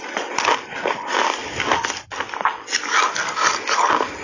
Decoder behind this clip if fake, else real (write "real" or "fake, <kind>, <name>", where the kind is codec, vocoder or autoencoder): real